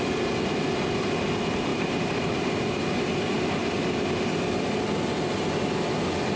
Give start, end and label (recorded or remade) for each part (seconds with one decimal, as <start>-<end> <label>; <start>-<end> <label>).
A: 0.0-1.7 recorded; 1.7-2.5 remade; 2.5-6.4 recorded